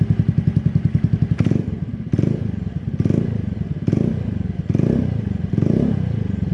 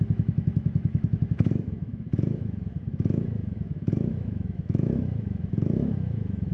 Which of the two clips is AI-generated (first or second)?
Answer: second